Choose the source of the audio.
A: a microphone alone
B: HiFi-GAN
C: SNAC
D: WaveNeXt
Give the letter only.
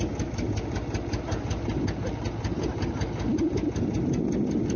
A